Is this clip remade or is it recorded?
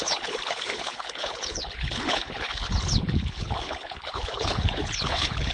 remade